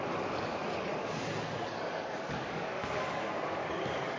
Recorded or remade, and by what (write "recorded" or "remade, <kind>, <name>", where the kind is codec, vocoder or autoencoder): remade, codec, DAC